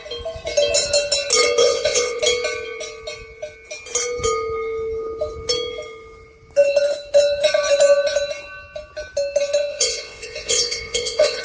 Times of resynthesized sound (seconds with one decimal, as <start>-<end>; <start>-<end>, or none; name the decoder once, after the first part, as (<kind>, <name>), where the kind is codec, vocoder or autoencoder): 1.6-2.2 (vocoder, WaveNeXt); 9.7-11.4